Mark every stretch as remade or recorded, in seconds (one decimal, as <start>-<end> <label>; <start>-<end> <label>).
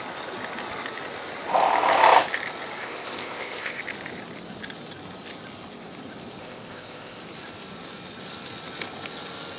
0.0-2.8 recorded; 2.8-3.8 remade; 3.8-6.4 recorded; 6.4-7.2 remade; 7.2-9.6 recorded